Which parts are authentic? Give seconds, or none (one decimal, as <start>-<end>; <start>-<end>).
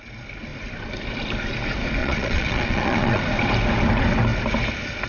0.0-2.0; 3.2-5.1